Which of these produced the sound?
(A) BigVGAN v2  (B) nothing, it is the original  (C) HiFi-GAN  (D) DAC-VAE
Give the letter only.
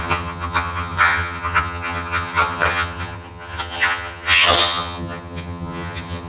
C